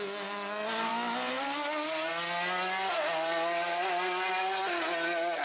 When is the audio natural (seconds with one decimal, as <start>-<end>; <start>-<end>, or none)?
0.0-5.4